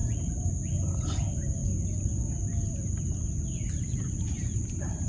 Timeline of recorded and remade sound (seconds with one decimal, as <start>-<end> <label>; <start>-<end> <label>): 0.0-0.8 recorded; 0.8-1.6 remade; 1.6-3.7 recorded; 3.7-5.1 remade